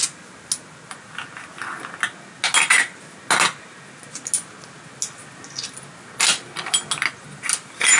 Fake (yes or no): no